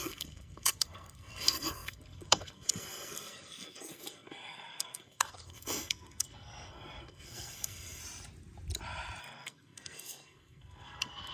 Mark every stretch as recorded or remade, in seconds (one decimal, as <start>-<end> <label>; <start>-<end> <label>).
0.0-8.0 remade; 8.0-9.2 recorded; 9.2-11.3 remade